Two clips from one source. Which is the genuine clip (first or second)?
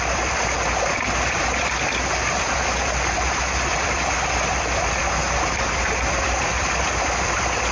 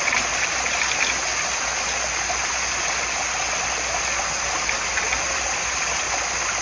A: second